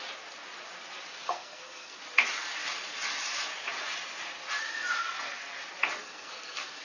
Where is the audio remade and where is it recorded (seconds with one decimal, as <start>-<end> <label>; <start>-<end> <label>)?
0.0-1.1 recorded; 1.1-2.0 remade; 2.0-6.0 recorded; 6.0-6.8 remade